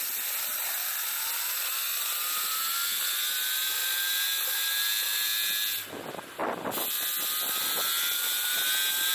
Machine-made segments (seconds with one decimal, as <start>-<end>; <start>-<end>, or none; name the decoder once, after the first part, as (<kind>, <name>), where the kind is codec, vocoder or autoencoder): 0.9-2.7 (vocoder, BigVGAN v2)